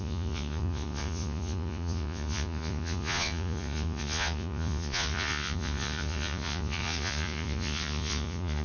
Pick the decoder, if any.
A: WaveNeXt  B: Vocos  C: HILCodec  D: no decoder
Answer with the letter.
B